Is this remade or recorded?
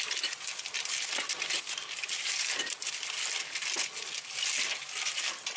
recorded